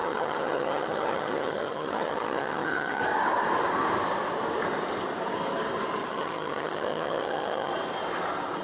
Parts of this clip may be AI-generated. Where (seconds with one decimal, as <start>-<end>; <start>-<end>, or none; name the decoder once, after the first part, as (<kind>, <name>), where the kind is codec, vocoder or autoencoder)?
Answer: 0.0-3.0 (vocoder, HiFi-GAN); 6.1-7.7